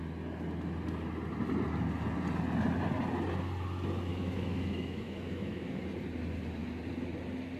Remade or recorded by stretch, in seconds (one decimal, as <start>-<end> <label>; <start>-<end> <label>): 0.0-4.1 recorded; 4.1-5.8 remade; 5.8-7.6 recorded